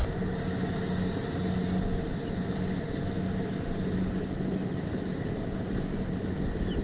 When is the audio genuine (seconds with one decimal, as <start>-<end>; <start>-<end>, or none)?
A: 0.0-6.8